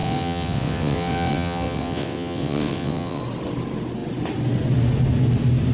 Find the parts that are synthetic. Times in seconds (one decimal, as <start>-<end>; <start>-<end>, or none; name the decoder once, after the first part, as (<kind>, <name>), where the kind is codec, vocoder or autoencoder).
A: 0.0-3.2 (vocoder, WaveNeXt)